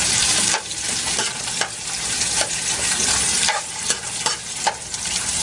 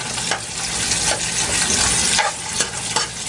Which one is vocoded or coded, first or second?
first